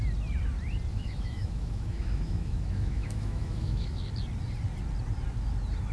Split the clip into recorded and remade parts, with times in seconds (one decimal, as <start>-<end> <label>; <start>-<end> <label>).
0.0-0.9 recorded; 0.9-4.0 remade; 4.0-5.9 recorded